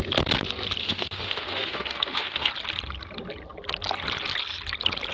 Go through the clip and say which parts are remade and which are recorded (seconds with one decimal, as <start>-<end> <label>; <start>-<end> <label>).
0.0-0.8 recorded; 0.8-2.5 remade; 2.5-5.1 recorded